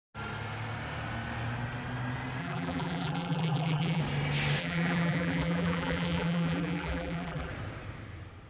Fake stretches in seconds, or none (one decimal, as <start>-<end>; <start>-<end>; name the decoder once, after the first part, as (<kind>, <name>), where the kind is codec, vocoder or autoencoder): 2.4-4.0 (vocoder, BigVGAN v2); 4.6-7.5